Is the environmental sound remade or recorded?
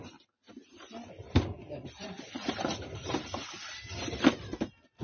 recorded